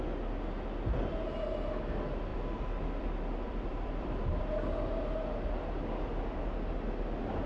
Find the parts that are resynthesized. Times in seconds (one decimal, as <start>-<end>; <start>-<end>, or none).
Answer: 2.3-4.4